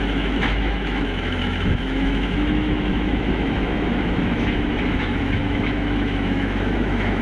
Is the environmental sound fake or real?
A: fake